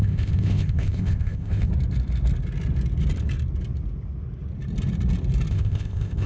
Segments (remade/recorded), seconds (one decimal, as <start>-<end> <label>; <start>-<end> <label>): 0.0-1.7 remade; 1.7-5.5 recorded; 5.5-6.3 remade